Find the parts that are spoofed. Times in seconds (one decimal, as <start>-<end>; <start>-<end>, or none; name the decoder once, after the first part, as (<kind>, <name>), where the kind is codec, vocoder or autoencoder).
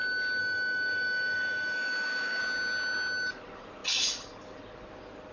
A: 0.4-2.4 (autoencoder, DAC-VAE)